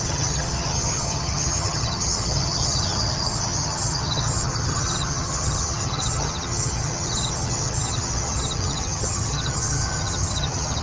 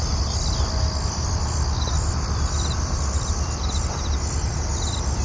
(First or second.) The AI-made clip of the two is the first